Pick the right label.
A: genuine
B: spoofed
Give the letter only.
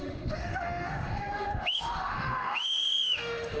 B